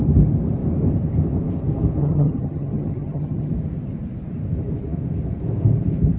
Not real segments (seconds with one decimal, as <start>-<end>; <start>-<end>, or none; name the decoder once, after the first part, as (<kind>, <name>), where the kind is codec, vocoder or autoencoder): 2.0-3.5 (vocoder, HiFi-GAN)

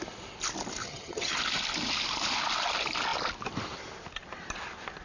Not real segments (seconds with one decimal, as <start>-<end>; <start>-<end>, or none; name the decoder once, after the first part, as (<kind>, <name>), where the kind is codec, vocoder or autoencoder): 0.8-1.4 (vocoder, HiFi-GAN)

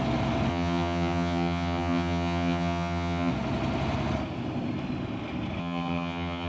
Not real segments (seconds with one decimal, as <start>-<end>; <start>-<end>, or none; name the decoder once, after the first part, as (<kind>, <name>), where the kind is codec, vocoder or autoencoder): 0.5-3.3 (vocoder, HiFi-GAN); 5.6-6.5

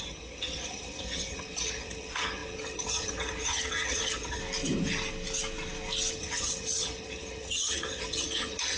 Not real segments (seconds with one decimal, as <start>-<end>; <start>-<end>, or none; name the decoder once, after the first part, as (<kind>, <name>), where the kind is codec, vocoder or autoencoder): 0.0-4.4 (vocoder, HiFi-GAN); 6.1-8.8

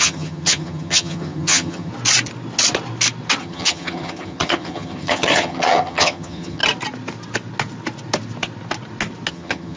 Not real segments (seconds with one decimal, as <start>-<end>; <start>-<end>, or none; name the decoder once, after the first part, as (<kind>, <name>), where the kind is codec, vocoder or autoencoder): 0.0-1.9 (vocoder, HiFi-GAN); 3.4-6.6; 9.3-9.8

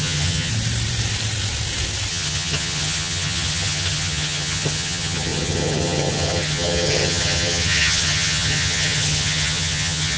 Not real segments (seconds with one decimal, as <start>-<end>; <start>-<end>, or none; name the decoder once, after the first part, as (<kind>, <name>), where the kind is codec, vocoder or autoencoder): 0.0-0.5 (vocoder, HiFi-GAN); 2.1-10.2

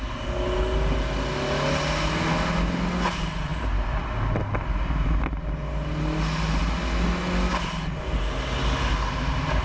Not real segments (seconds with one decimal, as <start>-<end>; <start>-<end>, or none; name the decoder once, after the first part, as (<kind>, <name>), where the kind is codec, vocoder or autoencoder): none

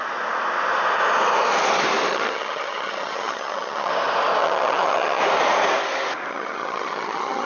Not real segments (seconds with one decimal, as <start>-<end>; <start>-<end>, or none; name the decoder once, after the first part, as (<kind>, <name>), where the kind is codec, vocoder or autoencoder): 2.1-3.9 (vocoder, HiFi-GAN); 4.4-5.2; 6.3-7.5